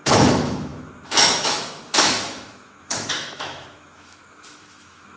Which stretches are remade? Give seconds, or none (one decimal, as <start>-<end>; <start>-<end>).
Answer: 0.0-5.2